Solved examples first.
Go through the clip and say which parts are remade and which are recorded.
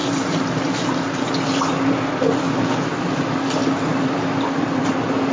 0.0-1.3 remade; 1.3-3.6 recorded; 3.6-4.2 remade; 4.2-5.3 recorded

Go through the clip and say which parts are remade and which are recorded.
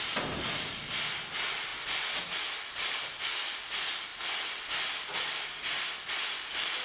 0.0-6.8 recorded